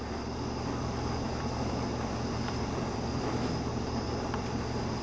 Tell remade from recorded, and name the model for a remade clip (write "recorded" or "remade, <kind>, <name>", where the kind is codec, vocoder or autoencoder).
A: remade, vocoder, BigVGAN v2